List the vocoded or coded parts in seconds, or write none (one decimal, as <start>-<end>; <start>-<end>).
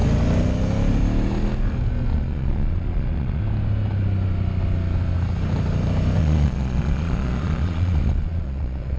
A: 2.1-3.4; 6.2-9.0